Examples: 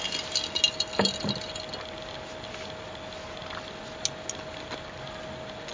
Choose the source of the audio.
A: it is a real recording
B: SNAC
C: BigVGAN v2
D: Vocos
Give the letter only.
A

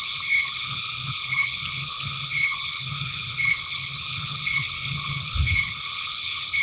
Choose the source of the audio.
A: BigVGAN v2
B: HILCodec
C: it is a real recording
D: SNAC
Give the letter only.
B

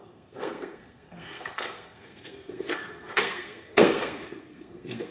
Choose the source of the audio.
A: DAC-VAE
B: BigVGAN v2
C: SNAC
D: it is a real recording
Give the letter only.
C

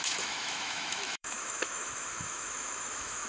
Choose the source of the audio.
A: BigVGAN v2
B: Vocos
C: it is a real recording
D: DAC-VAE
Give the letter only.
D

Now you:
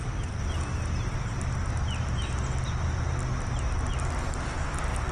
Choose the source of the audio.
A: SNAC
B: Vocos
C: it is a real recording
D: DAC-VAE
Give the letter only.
C